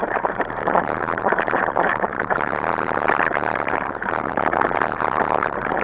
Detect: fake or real fake